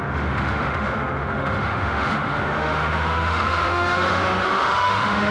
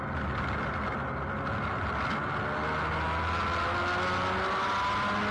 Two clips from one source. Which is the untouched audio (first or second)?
second